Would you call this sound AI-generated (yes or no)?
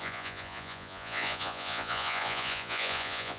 yes